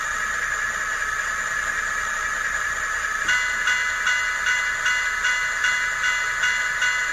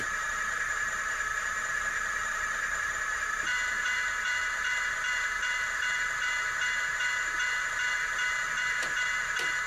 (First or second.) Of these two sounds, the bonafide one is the first